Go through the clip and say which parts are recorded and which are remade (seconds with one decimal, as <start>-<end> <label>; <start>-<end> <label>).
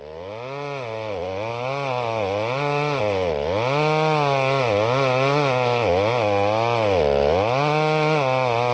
0.0-8.7 recorded